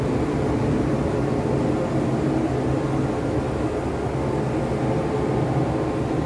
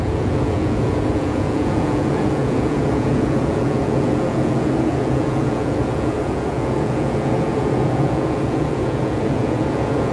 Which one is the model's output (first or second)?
second